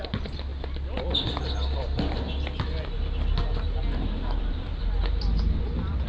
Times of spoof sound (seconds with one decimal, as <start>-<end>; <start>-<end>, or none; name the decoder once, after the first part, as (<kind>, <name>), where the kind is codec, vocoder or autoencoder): none

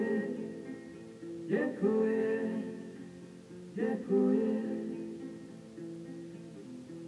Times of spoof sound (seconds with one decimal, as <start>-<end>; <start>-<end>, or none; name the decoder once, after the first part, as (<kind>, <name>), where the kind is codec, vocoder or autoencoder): 1.6-3.0 (autoencoder, DAC-VAE)

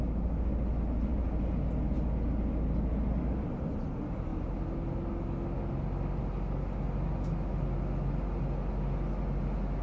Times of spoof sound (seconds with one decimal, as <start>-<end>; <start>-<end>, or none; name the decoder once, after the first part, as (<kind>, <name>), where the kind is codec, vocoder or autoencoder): none